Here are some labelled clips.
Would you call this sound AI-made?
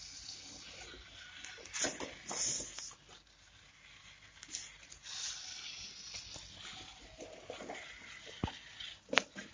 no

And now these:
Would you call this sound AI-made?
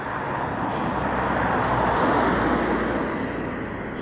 no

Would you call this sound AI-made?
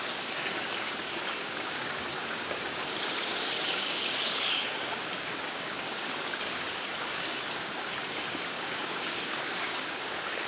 yes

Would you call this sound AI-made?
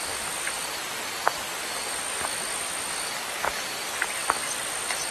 no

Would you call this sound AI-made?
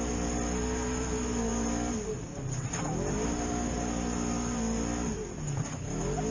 no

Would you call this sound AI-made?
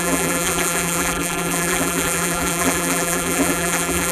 yes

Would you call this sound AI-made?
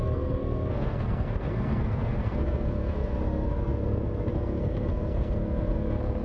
yes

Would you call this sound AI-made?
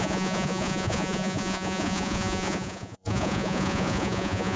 yes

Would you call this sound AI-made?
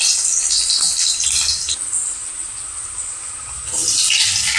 no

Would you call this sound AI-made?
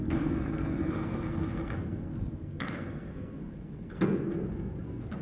yes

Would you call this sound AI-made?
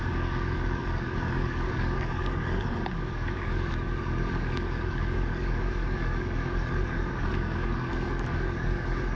yes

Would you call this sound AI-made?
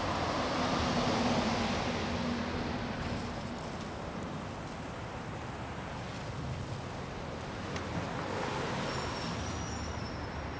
no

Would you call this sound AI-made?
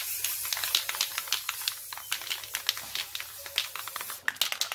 no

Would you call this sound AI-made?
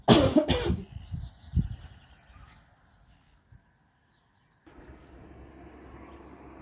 no